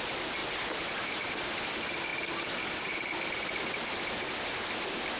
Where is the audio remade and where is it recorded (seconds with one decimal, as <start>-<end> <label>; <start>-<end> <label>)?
0.0-5.2 recorded